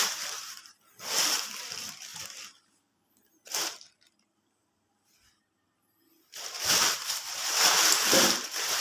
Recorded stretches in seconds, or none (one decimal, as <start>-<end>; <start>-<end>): none